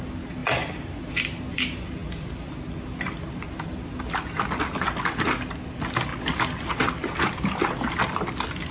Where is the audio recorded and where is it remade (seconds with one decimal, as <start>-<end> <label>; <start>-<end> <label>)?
0.0-6.1 recorded; 6.1-7.7 remade; 7.7-8.7 recorded